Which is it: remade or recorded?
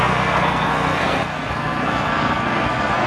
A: remade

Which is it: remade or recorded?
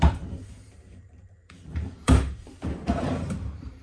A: remade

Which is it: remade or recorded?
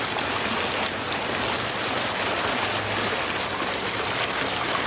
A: recorded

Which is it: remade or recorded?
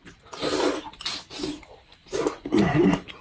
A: recorded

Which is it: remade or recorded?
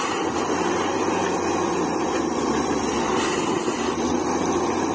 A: remade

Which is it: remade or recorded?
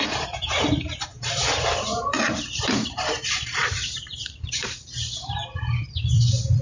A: remade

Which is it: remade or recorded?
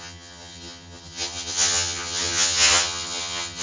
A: remade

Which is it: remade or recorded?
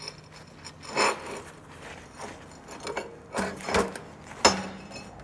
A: recorded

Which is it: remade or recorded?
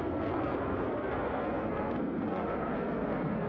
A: remade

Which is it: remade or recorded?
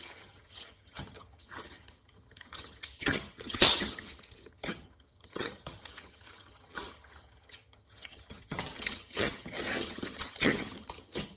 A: remade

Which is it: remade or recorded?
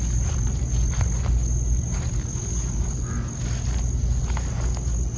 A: recorded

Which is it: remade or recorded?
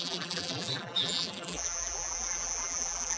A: remade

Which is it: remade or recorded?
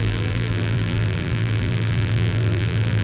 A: remade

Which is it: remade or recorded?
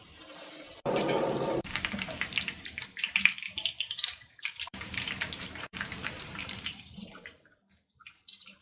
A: remade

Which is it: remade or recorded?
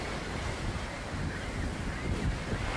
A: recorded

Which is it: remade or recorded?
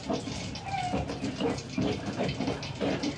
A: recorded